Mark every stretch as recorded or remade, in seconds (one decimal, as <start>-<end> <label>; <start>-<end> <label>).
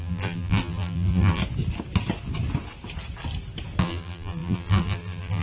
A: 0.0-1.4 remade; 1.4-3.8 recorded; 3.8-5.4 remade